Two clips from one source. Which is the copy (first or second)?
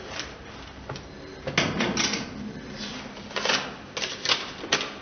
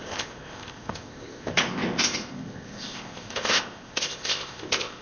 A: second